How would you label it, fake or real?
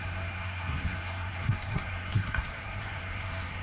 fake